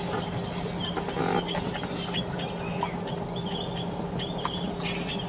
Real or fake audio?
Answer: real